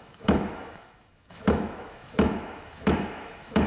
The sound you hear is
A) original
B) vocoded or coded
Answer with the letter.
B